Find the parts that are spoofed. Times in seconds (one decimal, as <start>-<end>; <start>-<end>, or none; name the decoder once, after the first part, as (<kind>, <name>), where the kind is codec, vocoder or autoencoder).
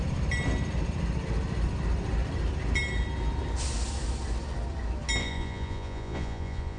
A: 5.2-6.8 (vocoder, Vocos)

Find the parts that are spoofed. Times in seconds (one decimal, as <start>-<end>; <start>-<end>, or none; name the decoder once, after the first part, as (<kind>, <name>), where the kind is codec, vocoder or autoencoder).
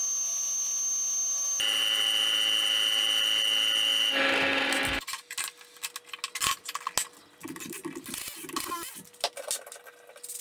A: none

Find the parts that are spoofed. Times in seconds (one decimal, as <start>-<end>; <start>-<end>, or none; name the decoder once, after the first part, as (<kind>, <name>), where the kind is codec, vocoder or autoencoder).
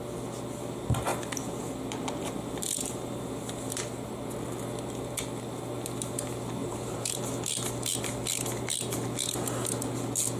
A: 6.6-7.2 (vocoder, BigVGAN v2)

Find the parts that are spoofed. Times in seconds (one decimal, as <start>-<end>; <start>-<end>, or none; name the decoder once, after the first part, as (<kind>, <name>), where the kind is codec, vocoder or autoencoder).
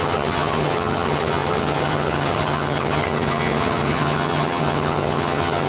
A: 0.0-5.7 (vocoder, HiFi-GAN)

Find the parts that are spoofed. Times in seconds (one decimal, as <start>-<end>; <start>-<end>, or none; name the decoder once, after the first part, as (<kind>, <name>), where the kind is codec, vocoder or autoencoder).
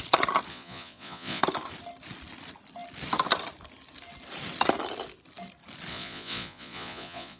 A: 0.5-1.4 (vocoder, Vocos); 5.9-7.4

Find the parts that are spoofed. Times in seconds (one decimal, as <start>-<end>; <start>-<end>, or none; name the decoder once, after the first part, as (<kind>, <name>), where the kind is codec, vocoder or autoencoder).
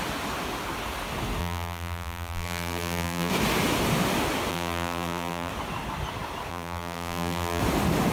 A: 1.4-3.3 (vocoder, BigVGAN v2); 4.5-5.5; 6.5-7.6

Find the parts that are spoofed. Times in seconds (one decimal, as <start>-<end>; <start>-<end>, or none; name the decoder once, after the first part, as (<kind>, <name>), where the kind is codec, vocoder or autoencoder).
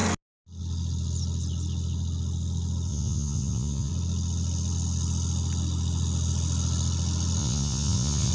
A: 2.9-3.9 (vocoder, Vocos); 7.4-8.3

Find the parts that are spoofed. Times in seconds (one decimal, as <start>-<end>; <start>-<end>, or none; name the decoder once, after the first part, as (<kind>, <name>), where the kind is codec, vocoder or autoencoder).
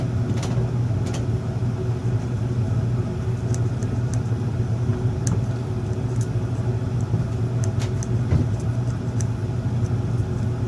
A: 2.0-4.4 (vocoder, BigVGAN v2); 4.9-5.4; 6.8-7.8